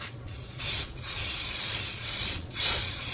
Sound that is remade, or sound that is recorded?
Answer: remade